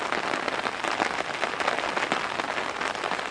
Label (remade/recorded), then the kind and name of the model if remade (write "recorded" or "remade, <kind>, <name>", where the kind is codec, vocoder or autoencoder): recorded